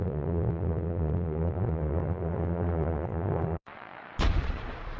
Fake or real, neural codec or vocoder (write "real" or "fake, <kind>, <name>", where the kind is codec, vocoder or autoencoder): fake, vocoder, Vocos